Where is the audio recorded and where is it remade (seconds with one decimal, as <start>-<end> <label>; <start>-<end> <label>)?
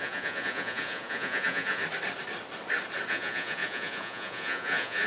0.0-1.8 remade; 1.8-3.1 recorded; 3.1-5.1 remade